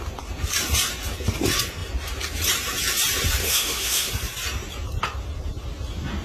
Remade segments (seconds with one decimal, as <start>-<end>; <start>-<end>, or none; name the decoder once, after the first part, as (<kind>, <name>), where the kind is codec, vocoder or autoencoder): 3.4-4.1 (autoencoder, DAC-VAE)